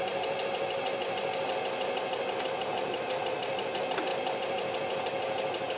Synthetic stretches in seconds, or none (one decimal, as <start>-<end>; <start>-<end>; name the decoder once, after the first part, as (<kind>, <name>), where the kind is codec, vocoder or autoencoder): none

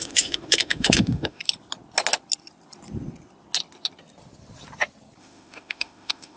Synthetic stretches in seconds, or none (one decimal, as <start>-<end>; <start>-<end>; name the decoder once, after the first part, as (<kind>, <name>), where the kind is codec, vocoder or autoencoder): 0.0-1.4 (autoencoder, DAC-VAE); 5.2-6.4

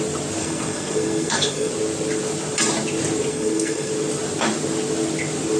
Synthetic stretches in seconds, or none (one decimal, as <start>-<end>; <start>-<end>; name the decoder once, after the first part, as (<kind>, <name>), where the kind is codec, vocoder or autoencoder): 0.4-1.7 (codec, SNAC); 3.3-3.9

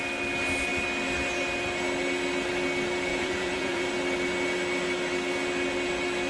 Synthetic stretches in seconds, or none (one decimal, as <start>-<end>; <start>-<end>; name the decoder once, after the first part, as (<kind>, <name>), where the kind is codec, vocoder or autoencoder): 3.1-3.9 (vocoder, Vocos)

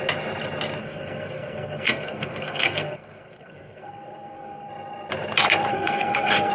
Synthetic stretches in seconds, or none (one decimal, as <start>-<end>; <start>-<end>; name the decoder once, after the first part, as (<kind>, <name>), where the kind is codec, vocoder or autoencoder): 0.8-4.7 (codec, SNAC); 5.7-6.5

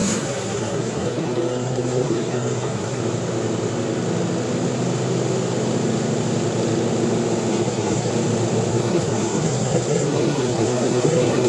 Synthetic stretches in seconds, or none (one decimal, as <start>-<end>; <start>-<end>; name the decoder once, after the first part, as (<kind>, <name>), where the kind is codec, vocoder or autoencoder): 0.0-3.0 (codec, SNAC); 7.5-8.1; 8.7-11.5

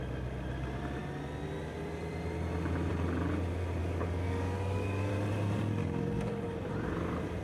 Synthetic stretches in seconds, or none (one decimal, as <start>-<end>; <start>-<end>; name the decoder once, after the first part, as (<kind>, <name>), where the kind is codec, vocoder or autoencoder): 3.8-5.1 (codec, DAC); 5.8-6.4